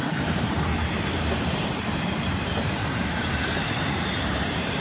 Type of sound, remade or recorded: remade